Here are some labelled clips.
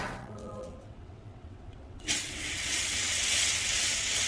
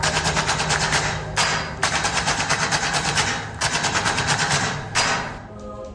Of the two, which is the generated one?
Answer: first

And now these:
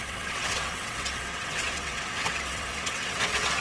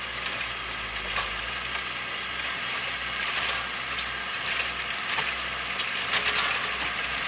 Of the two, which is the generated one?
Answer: first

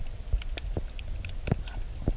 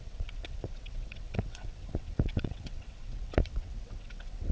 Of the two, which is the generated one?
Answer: second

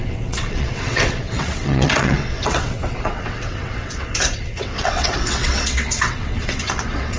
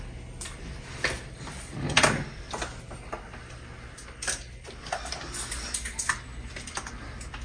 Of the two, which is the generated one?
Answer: first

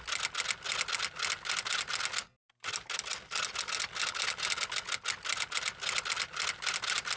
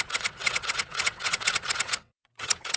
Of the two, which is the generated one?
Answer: second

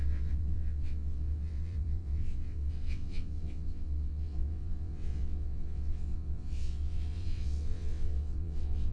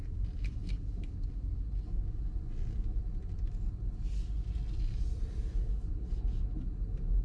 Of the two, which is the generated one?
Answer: first